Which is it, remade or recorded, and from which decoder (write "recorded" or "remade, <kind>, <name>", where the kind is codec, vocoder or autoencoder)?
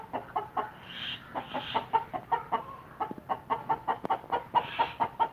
recorded